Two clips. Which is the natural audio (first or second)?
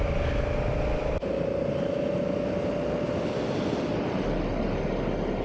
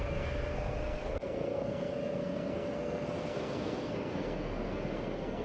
first